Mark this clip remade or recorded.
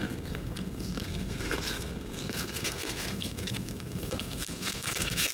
remade